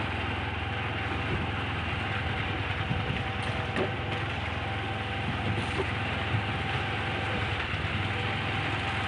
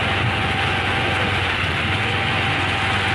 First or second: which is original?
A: first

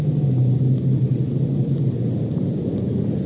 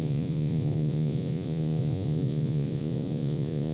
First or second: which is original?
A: first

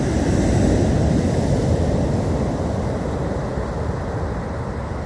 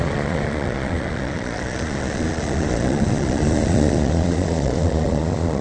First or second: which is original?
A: first